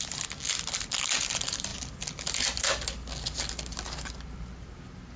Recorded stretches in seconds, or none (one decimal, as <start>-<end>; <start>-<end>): 0.0-5.2